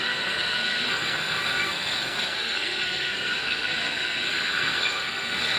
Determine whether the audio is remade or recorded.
remade